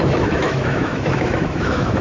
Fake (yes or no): yes